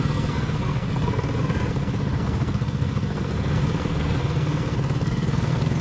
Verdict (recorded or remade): remade